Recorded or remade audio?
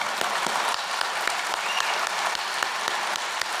recorded